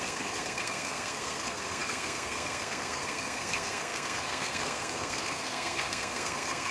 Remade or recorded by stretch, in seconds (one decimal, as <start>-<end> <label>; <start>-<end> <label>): 0.0-6.7 remade